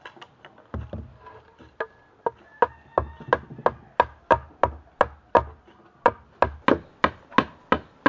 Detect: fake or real real